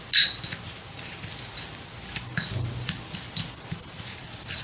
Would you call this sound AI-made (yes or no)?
no